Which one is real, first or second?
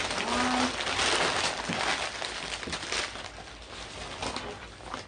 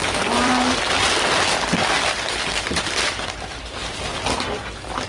first